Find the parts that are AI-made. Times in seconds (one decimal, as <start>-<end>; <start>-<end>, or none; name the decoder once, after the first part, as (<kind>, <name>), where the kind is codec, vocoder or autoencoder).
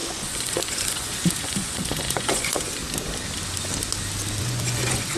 0.0-2.8 (vocoder, Vocos); 4.4-5.2